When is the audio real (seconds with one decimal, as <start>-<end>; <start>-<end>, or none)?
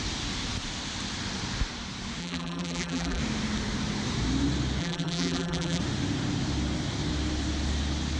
0.0-2.2; 3.2-4.8; 5.8-8.2